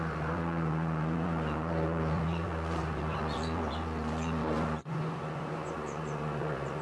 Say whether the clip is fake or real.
fake